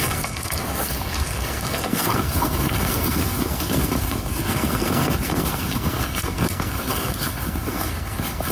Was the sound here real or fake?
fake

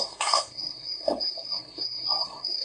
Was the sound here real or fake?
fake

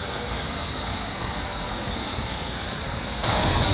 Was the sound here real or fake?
fake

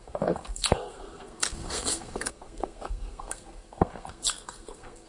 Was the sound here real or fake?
fake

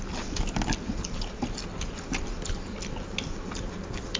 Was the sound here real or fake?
real